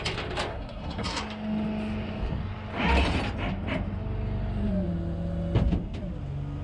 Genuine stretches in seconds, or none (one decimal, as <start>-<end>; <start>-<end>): 0.0-0.5; 1.2-6.6